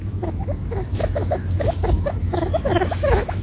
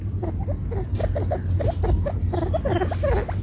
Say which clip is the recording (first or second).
second